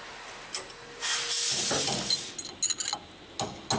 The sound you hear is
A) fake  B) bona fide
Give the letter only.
B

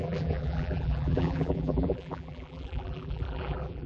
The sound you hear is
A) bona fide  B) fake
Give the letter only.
B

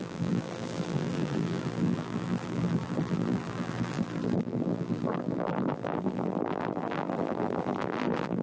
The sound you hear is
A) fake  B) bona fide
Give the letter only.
A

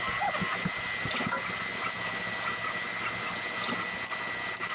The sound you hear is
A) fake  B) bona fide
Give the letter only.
B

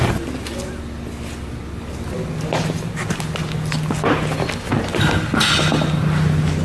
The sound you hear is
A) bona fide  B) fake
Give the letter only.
A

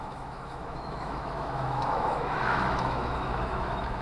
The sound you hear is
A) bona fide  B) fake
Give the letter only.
B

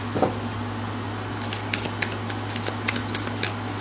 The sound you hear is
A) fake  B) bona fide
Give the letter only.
B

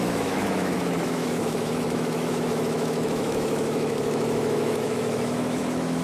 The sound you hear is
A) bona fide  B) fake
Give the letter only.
B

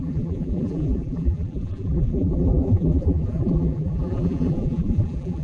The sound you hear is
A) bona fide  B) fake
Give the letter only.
B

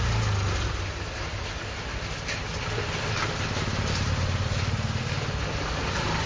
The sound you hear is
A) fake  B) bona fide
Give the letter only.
B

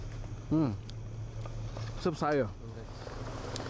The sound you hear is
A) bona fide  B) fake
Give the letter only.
A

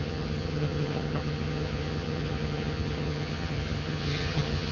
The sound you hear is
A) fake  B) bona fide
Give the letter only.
A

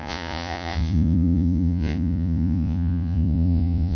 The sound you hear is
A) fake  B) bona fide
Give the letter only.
A